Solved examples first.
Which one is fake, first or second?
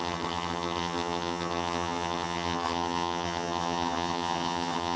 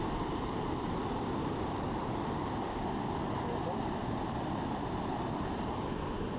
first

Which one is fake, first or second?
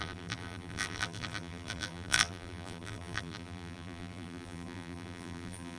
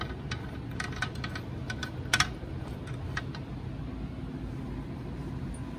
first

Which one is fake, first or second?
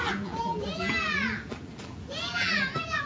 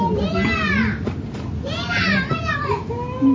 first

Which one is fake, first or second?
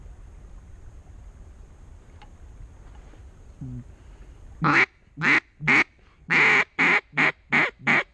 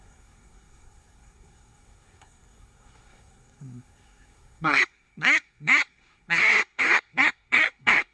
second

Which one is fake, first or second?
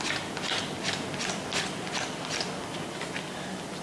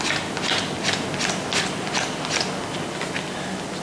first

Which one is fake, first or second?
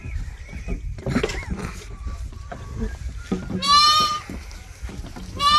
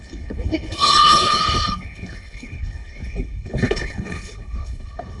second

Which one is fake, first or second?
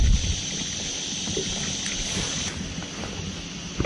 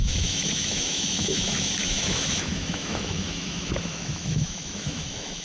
second